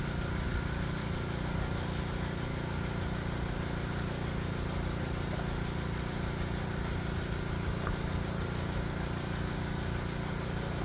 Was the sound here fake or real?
real